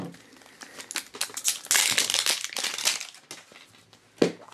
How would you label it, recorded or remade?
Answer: recorded